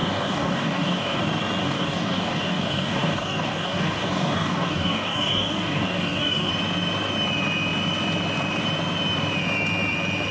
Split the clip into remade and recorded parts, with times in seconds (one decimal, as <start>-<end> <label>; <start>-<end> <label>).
0.0-1.2 remade; 1.2-1.6 recorded; 1.6-6.5 remade; 6.5-10.3 recorded